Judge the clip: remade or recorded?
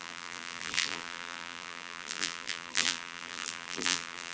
remade